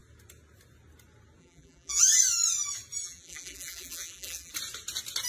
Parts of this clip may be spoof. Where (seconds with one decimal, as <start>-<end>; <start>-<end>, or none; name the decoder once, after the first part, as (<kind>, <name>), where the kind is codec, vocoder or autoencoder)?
1.4-2.0 (vocoder, BigVGAN v2); 3.0-4.5